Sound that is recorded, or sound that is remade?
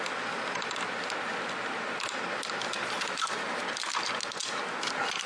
recorded